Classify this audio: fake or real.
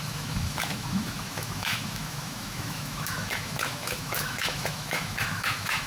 fake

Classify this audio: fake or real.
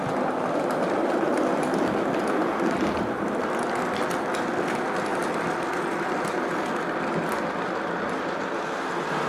real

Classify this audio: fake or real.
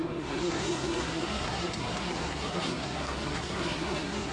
fake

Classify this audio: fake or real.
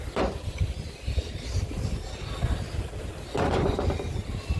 real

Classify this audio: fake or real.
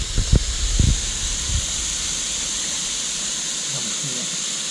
real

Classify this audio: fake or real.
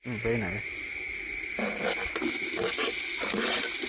real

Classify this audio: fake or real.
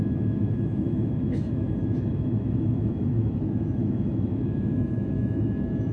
fake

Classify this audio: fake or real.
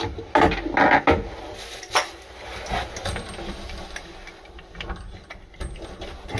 real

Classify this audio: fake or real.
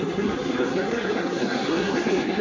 fake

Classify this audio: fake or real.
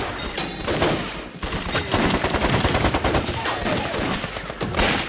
real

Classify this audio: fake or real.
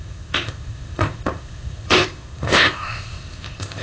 fake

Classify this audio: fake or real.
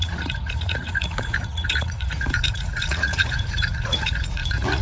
fake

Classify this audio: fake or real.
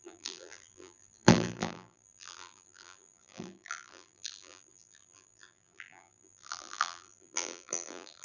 fake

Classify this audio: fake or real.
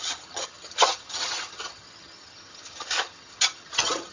fake